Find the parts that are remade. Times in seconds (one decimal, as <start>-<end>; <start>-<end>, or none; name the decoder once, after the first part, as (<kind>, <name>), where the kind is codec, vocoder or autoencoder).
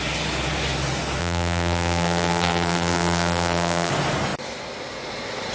1.2-3.9 (vocoder, BigVGAN v2)